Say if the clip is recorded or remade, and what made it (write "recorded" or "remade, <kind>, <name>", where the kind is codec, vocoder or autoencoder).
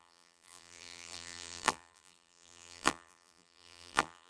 remade, vocoder, BigVGAN v2